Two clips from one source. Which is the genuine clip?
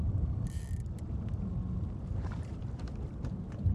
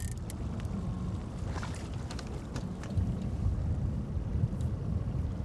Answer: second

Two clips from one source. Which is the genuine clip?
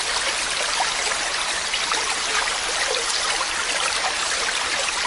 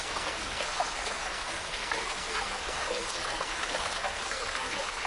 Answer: first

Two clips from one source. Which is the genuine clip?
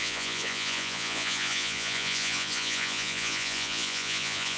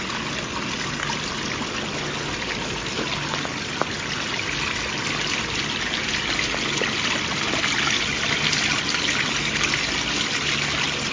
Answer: second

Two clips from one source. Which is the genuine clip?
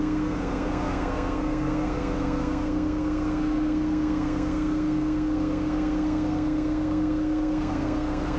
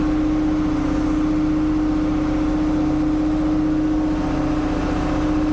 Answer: second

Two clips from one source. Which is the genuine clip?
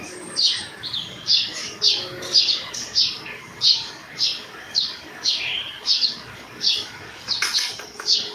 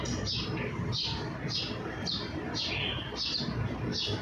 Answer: second